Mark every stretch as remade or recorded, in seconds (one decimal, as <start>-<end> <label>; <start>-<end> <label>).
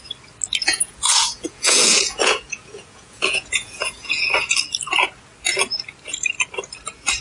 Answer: 0.0-0.6 recorded; 0.6-4.3 remade; 4.3-7.2 recorded